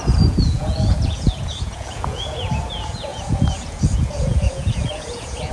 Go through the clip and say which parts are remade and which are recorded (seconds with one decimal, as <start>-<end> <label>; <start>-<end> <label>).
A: 0.0-5.5 remade